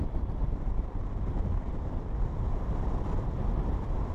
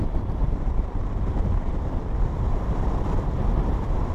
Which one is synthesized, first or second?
second